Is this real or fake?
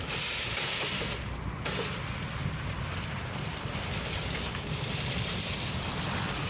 real